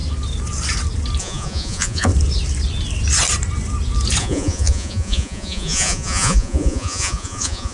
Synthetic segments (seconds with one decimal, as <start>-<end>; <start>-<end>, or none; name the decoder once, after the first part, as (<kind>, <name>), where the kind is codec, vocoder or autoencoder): 1.2-2.1 (vocoder, Vocos); 4.2-7.7